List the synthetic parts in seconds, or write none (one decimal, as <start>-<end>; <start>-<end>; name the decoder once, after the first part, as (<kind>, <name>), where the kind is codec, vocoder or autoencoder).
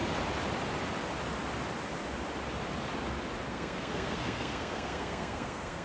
3.5-5.8 (codec, SNAC)